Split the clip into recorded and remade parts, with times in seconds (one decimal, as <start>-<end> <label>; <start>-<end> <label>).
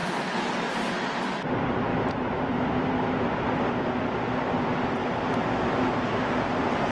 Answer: 0.0-6.9 recorded